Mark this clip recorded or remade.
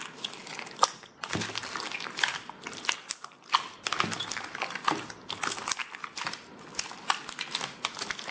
recorded